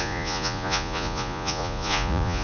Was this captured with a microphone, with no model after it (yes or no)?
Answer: no